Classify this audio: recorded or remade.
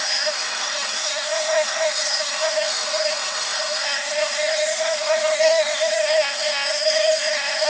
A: remade